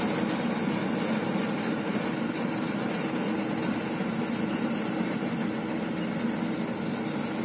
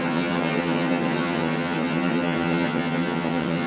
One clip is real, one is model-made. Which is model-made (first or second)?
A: second